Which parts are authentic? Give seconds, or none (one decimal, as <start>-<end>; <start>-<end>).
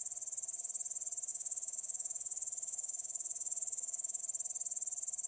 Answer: 0.0-1.3; 4.2-5.3